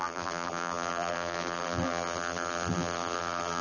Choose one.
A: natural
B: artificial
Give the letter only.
B